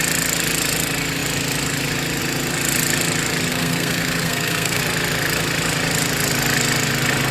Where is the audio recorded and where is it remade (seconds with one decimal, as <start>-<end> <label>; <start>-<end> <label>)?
0.0-3.5 recorded; 3.5-4.8 remade; 4.8-7.3 recorded

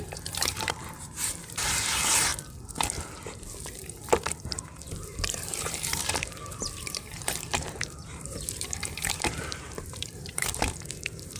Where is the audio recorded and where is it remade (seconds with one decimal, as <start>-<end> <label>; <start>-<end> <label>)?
0.0-2.3 remade; 2.3-4.4 recorded; 4.4-11.4 remade